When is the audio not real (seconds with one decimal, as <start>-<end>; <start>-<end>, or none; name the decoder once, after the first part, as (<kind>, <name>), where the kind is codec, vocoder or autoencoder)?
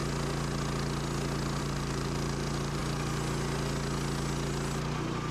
1.6-2.8 (vocoder, BigVGAN v2)